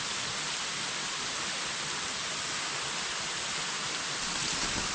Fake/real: real